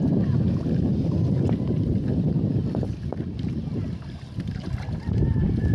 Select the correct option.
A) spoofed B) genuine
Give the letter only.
B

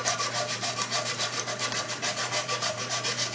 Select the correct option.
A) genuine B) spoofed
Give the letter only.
B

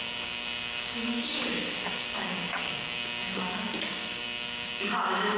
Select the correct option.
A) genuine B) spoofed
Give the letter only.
B